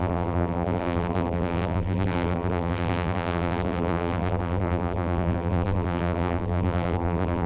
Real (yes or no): no